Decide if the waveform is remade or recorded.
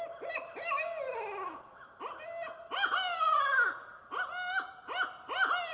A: recorded